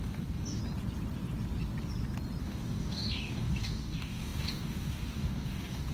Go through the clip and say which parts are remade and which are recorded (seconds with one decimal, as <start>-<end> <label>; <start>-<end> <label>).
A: 0.0-0.6 remade; 0.6-2.4 recorded; 2.4-5.9 remade